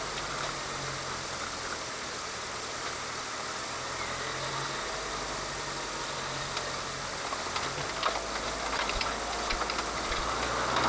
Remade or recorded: remade